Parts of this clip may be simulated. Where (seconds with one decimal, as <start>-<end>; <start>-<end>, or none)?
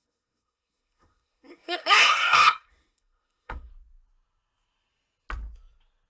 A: 0.0-3.7